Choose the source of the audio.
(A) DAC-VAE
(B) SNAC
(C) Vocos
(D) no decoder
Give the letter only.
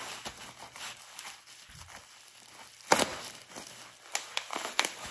D